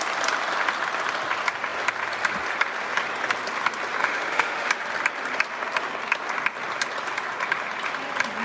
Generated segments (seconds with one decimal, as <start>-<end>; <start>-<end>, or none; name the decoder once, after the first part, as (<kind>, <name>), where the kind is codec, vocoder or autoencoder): 4.0-4.7 (autoencoder, DAC-VAE)